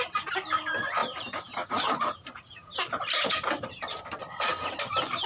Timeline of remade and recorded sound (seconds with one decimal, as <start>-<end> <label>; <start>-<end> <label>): 0.0-1.0 recorded; 1.0-4.2 remade; 4.2-5.3 recorded